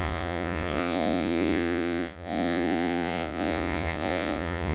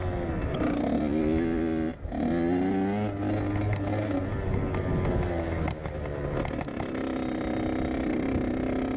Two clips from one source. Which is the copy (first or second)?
first